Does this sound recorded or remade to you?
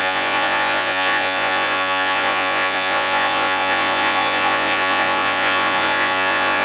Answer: remade